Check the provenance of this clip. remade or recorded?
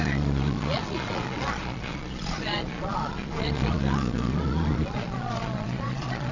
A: remade